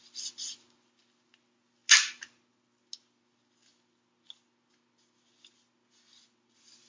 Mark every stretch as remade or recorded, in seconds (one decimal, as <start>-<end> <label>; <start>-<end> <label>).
0.0-6.9 recorded